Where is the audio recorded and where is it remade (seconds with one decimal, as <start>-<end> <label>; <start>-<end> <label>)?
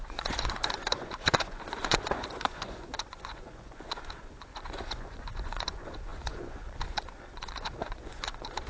0.0-8.7 remade